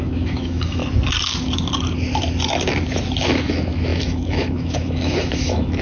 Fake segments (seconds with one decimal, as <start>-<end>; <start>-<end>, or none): 0.0-0.8; 3.2-5.8